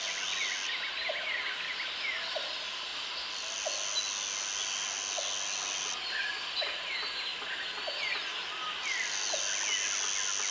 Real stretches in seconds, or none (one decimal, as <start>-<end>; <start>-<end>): 0.0-10.5